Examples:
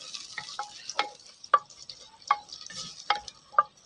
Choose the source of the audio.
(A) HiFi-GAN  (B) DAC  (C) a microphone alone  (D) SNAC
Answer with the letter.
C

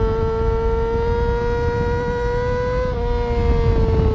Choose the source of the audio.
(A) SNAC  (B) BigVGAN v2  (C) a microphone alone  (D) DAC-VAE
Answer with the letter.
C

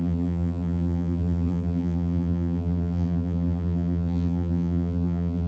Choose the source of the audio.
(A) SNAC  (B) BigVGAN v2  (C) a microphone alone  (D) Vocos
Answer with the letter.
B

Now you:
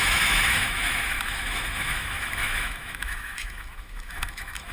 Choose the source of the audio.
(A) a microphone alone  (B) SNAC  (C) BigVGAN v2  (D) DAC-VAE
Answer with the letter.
D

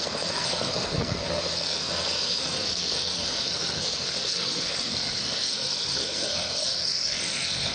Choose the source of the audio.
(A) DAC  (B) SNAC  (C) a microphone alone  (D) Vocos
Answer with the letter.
B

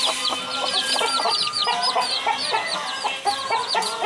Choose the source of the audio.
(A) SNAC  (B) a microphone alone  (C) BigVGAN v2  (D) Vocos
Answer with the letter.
B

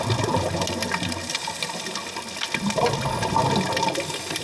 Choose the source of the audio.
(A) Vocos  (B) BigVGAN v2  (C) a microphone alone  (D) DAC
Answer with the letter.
C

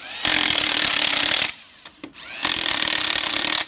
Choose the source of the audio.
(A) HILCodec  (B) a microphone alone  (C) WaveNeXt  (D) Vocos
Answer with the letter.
B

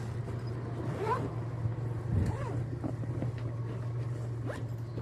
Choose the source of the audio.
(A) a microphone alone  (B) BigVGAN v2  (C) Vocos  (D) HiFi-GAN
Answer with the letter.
A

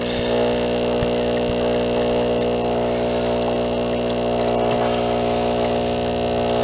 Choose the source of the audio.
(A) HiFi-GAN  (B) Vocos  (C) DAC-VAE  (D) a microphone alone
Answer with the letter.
D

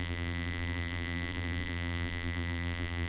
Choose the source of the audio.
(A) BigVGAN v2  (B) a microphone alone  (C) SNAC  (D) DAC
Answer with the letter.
A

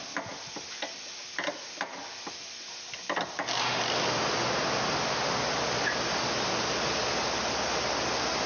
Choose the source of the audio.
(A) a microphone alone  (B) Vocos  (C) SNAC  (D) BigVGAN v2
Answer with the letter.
A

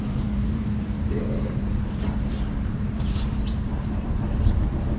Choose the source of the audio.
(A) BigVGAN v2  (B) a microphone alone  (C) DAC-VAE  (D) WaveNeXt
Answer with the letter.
A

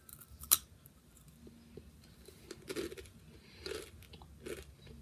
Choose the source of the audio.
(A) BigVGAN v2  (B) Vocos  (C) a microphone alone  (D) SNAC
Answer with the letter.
C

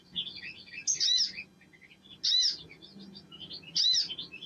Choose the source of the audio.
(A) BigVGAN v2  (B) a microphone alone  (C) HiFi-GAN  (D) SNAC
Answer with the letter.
B